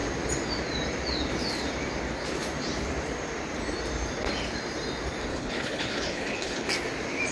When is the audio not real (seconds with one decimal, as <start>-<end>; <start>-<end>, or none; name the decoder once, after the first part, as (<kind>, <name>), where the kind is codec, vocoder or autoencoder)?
5.3-6.7 (codec, HILCodec)